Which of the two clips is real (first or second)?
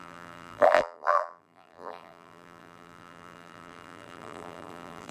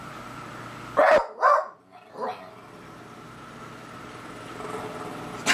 second